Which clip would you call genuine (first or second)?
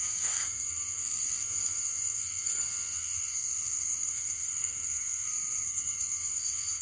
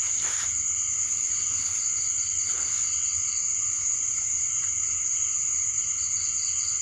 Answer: second